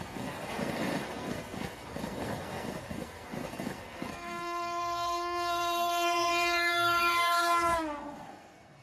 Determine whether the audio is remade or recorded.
remade